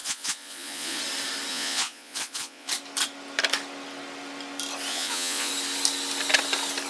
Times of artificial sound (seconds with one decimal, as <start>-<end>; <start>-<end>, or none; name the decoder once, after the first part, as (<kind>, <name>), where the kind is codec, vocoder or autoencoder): 0.0-1.0 (vocoder, Vocos); 1.5-2.7; 4.9-5.5

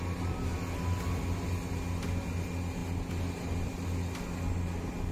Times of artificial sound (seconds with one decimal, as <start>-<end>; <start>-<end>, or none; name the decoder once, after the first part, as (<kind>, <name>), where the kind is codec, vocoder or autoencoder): none

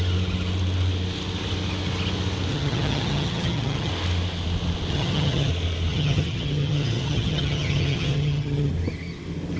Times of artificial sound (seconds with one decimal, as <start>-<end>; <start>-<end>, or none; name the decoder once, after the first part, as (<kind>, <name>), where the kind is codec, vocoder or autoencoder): 2.5-3.9 (vocoder, HiFi-GAN); 4.9-5.5; 5.9-8.7

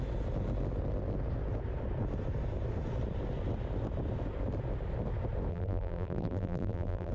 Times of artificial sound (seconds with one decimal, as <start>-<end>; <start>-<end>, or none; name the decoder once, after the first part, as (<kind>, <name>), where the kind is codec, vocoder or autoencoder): 5.5-7.1 (vocoder, BigVGAN v2)

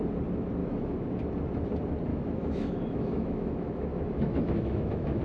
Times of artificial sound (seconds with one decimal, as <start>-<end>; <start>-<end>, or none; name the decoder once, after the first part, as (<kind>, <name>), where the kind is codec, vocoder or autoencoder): 0.6-1.2 (autoencoder, DAC-VAE); 2.1-5.2

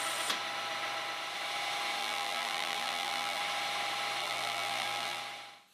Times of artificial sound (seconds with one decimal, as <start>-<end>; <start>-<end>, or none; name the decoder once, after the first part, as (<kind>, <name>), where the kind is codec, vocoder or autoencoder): 2.0-3.4 (vocoder, BigVGAN v2); 4.2-5.2

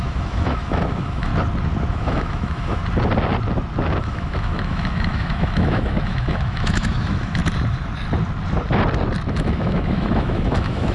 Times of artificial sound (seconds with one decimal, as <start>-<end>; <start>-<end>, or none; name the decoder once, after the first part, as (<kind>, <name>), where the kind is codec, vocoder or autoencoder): 0.0-1.3 (autoencoder, DAC-VAE); 1.9-2.8; 4.0-7.4; 9.3-10.9